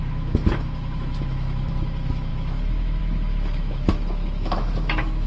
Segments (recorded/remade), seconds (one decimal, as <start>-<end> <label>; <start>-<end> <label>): 0.0-5.3 remade